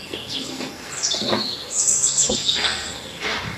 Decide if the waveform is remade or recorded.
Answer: remade